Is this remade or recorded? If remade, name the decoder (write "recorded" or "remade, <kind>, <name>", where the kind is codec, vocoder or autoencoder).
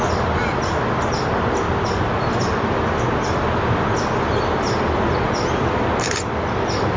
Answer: recorded